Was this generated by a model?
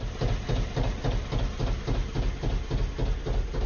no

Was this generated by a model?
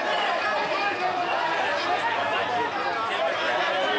no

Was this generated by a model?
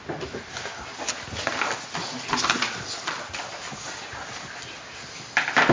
no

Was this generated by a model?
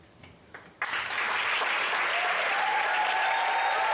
no